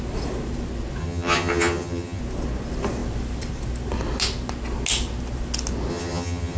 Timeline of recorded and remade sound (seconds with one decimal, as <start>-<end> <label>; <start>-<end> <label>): 0.0-1.0 recorded; 1.0-2.2 remade; 2.2-5.9 recorded; 5.9-6.6 remade